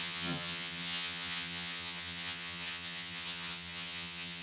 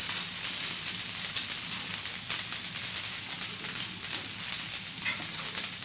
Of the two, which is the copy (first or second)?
first